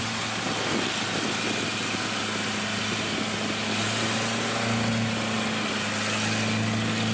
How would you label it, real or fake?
real